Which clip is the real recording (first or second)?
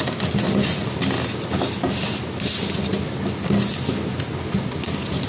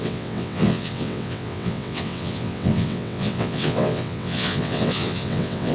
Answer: first